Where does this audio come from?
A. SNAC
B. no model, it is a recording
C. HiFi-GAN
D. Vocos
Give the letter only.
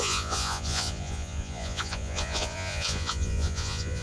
D